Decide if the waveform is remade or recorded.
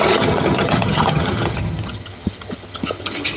remade